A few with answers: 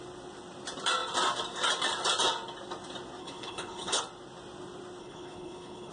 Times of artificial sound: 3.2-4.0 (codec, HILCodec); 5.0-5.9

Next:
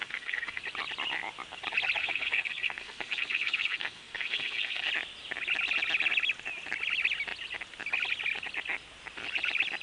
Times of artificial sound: 0.0-0.6 (codec, SNAC); 2.0-4.9

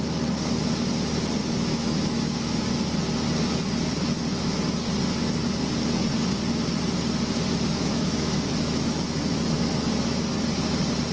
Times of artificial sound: 1.4-2.6 (autoencoder, DAC-VAE); 7.7-10.3

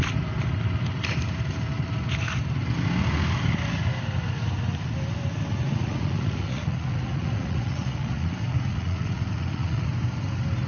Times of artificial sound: 5.5-9.9 (vocoder, Vocos)

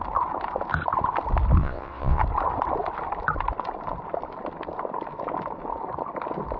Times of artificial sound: 1.6-2.2 (vocoder, WaveNeXt)

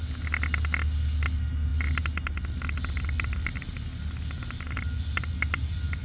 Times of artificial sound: none